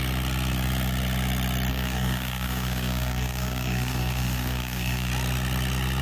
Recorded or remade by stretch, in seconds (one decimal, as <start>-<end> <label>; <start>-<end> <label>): 0.0-1.7 recorded; 1.7-5.1 remade; 5.1-6.0 recorded